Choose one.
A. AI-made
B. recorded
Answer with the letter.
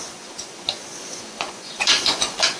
A